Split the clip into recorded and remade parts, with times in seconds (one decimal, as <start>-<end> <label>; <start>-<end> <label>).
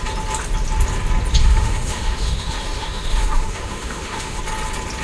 0.0-1.4 recorded; 1.4-4.4 remade; 4.4-5.0 recorded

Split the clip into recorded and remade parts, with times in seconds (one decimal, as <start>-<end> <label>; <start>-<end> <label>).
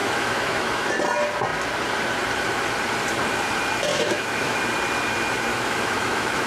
0.0-0.9 remade; 0.9-3.9 recorded; 3.9-4.6 remade; 4.6-5.5 recorded; 5.5-6.5 remade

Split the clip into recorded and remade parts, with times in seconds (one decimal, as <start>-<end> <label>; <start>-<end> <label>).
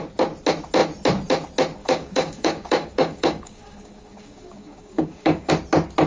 0.0-1.8 recorded; 1.8-5.5 remade; 5.5-6.1 recorded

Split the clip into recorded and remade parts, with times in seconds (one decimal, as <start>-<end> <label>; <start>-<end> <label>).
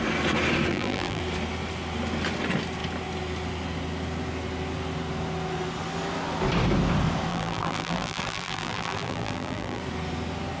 0.0-0.7 recorded; 0.7-1.2 remade; 1.2-7.3 recorded; 7.3-9.8 remade; 9.8-10.6 recorded